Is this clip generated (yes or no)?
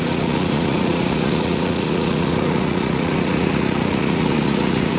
yes